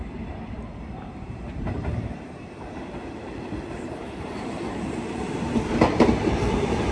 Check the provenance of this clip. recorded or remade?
remade